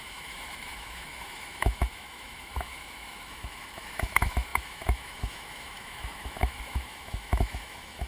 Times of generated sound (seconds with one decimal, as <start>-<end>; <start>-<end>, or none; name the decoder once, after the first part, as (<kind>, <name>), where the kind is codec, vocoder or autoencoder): 0.0-8.1 (autoencoder, DAC-VAE)